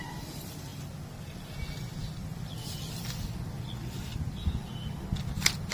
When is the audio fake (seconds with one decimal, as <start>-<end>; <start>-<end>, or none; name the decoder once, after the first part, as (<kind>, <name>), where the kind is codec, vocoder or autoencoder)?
0.7-1.4 (vocoder, BigVGAN v2); 2.0-3.0